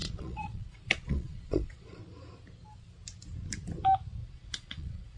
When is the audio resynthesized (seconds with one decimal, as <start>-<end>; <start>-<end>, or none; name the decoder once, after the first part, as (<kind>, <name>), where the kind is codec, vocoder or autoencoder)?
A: 0.0-2.0 (vocoder, Vocos); 4.3-5.2